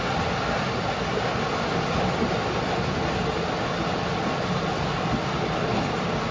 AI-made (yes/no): no